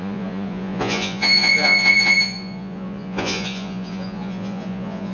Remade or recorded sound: remade